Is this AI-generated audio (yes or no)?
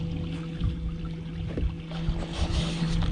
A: no